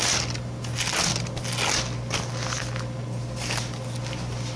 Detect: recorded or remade recorded